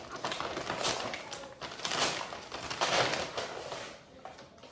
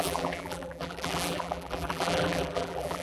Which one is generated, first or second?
second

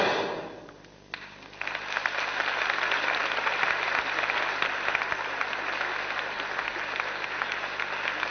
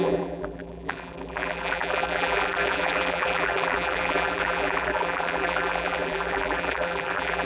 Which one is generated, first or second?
second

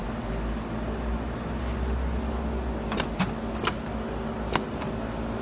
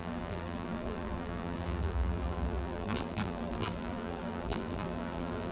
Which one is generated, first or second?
second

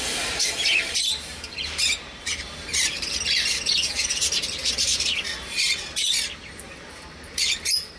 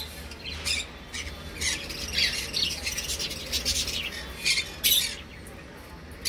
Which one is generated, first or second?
first